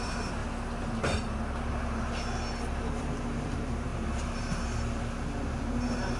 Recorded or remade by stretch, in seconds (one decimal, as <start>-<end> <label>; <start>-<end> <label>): 0.0-0.4 remade; 0.4-3.0 recorded; 3.0-3.9 remade; 3.9-5.6 recorded; 5.6-6.2 remade